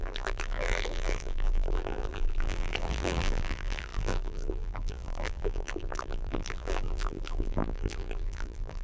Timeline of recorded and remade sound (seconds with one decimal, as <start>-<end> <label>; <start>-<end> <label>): 0.0-8.8 remade